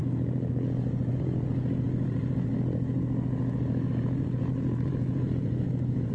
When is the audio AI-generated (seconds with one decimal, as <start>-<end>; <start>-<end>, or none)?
1.1-2.5; 3.9-6.1